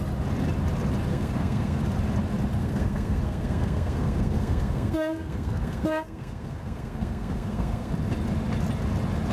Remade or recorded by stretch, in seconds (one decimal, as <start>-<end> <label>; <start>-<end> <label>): 0.0-1.1 recorded; 1.1-1.8 remade; 1.8-2.6 recorded; 2.6-7.9 remade; 7.9-9.3 recorded